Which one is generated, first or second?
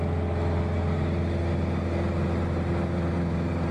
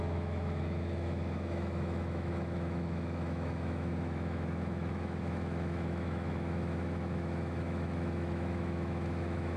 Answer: second